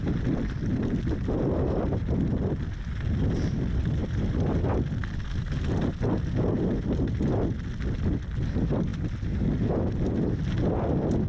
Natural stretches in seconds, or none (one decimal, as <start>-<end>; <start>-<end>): 0.0-11.3